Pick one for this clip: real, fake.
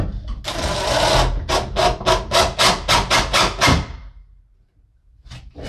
real